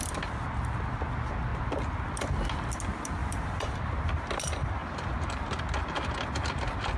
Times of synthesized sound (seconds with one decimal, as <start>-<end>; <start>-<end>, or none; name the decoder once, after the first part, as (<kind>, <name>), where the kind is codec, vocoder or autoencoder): 3.2-3.8 (vocoder, BigVGAN v2); 4.8-5.6